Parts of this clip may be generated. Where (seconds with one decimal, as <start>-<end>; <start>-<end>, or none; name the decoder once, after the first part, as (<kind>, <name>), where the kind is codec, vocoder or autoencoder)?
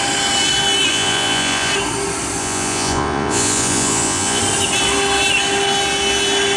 0.9-1.7 (vocoder, Vocos); 2.4-4.4